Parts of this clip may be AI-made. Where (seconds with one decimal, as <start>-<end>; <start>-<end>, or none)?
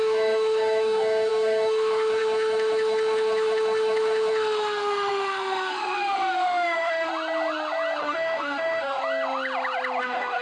0.0-7.1; 8.0-9.0; 10.0-10.4